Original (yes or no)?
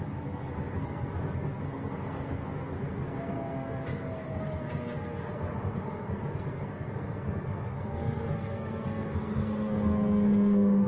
no